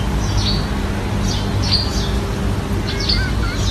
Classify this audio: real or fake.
real